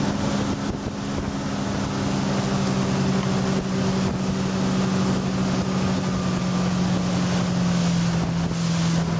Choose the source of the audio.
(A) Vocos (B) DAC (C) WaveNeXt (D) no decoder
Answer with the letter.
D